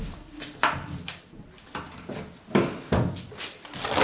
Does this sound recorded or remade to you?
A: recorded